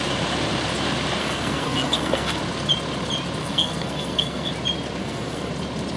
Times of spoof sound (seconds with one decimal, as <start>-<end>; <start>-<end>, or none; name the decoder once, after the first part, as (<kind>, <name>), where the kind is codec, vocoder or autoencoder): 1.2-2.4 (codec, SNAC); 3.4-4.5; 5.0-5.5